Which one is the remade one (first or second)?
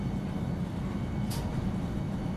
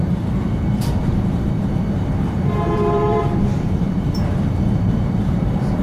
second